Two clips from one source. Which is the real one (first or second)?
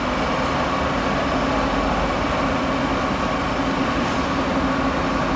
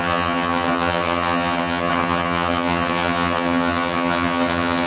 first